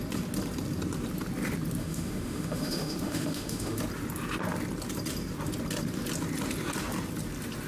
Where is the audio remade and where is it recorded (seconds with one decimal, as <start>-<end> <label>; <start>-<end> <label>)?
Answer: 0.0-1.8 recorded; 1.8-3.8 remade; 3.8-7.7 recorded